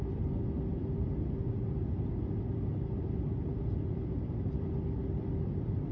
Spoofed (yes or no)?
no